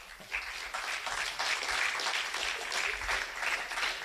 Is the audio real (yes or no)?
yes